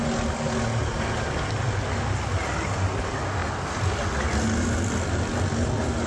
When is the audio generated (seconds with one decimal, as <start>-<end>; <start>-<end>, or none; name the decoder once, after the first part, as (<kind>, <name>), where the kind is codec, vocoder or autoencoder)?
none

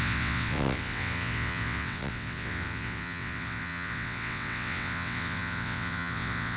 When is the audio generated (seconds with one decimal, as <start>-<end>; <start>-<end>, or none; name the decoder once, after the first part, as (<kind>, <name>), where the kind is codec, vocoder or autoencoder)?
0.0-6.6 (vocoder, WaveNeXt)

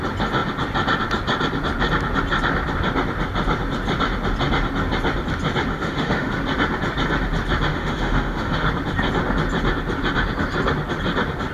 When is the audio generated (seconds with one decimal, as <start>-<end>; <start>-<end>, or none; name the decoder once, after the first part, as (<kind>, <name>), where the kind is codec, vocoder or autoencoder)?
5.7-6.3 (autoencoder, DAC-VAE); 7.7-8.7